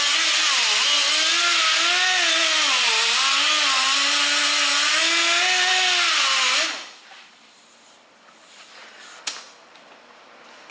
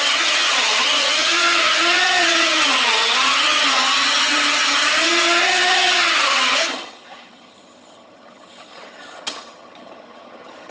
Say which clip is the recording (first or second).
first